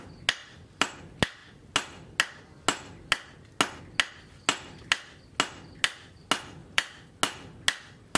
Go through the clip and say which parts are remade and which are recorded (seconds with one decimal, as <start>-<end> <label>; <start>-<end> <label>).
0.0-6.6 recorded; 6.6-7.1 remade; 7.1-8.2 recorded